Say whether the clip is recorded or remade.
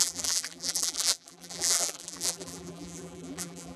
remade